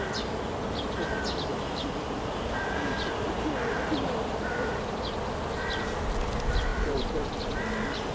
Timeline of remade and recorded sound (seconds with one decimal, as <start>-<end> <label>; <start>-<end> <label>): 0.0-1.8 recorded; 1.8-3.1 remade; 3.1-6.7 recorded; 6.7-7.4 remade; 7.4-8.1 recorded